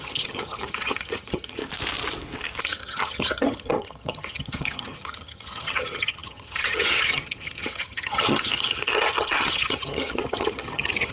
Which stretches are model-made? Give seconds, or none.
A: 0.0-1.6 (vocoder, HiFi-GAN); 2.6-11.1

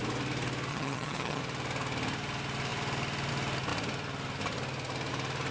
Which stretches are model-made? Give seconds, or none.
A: 0.7-1.4 (vocoder, HiFi-GAN)

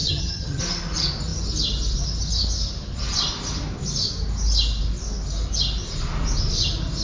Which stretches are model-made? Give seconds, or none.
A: 0.0-0.6 (vocoder, HiFi-GAN)

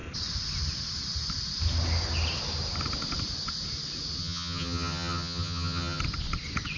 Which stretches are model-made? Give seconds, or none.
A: 4.2-6.0 (vocoder, HiFi-GAN)